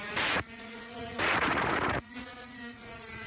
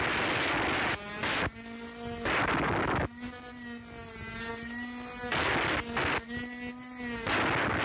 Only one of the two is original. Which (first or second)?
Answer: second